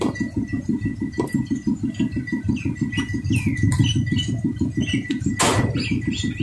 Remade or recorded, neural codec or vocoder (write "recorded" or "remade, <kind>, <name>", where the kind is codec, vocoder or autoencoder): recorded